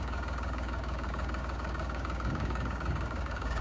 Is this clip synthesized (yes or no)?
yes